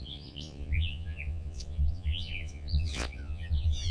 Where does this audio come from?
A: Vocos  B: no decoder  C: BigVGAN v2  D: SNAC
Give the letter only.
A